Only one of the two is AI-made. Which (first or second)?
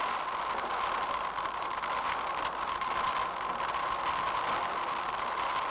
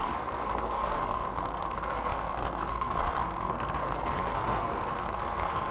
second